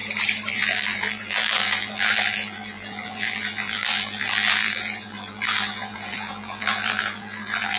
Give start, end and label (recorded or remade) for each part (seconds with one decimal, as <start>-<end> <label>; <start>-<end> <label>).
0.0-0.5 recorded; 0.5-7.8 remade